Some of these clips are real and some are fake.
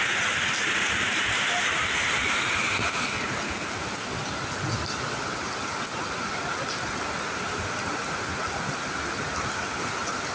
real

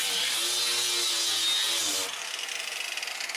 real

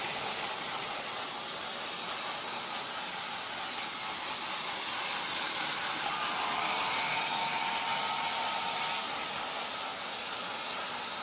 real